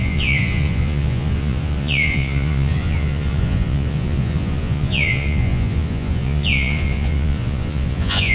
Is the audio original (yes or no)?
no